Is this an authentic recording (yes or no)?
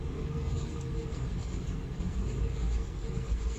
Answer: no